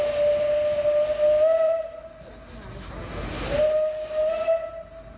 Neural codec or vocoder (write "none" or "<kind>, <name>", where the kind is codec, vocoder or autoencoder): none